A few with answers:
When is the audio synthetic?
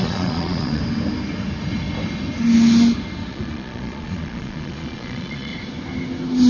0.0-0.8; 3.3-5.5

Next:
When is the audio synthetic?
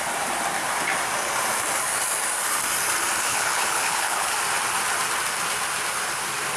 3.3-4.3